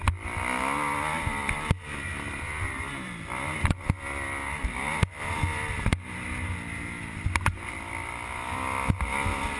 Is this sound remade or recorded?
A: recorded